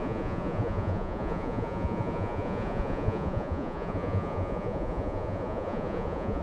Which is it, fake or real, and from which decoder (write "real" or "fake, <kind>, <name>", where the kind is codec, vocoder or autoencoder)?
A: fake, vocoder, Vocos